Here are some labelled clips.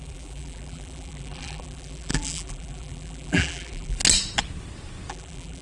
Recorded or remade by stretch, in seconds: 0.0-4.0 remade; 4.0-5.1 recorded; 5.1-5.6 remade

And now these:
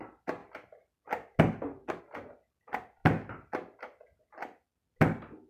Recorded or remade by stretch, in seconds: 0.0-5.5 recorded

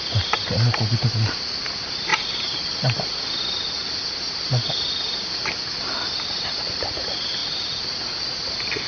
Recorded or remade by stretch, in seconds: 0.0-7.4 recorded; 7.4-8.2 remade; 8.2-8.9 recorded

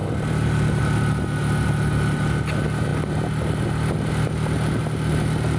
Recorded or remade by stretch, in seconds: 0.0-5.6 recorded

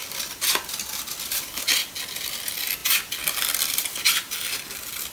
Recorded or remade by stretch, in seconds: 0.0-5.1 recorded

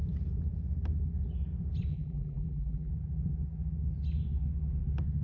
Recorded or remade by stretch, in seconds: 0.0-1.9 recorded; 1.9-2.9 remade; 2.9-5.2 recorded